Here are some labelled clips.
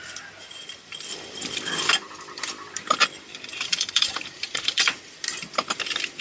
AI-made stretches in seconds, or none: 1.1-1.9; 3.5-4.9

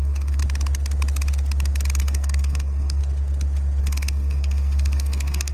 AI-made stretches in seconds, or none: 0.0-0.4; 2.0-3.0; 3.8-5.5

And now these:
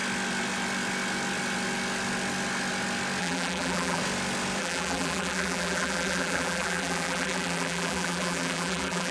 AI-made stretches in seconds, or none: 3.2-4.0; 4.6-9.1

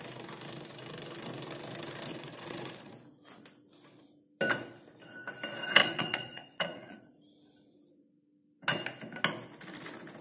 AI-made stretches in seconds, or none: 2.1-2.9; 5.8-7.0

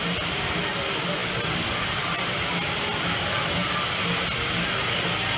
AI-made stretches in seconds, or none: none

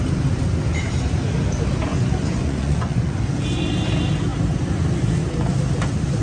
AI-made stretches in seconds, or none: 1.9-3.2

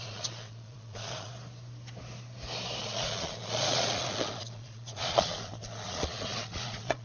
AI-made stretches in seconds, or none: 0.0-1.3; 2.8-7.0

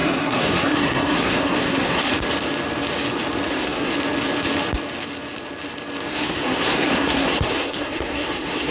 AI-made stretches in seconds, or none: 0.0-2.1; 3.5-3.9; 6.1-8.7